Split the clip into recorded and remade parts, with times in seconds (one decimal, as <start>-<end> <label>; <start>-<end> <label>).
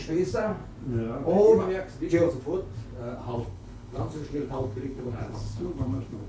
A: 0.0-3.3 recorded; 3.3-6.3 remade